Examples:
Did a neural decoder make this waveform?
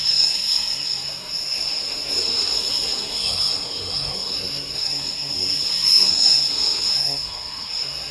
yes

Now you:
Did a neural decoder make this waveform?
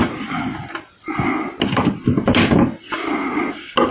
no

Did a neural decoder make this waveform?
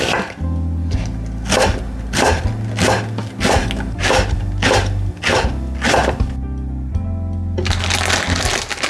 no